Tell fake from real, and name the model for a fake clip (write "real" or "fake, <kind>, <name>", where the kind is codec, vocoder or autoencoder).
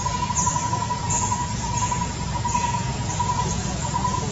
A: fake, vocoder, Vocos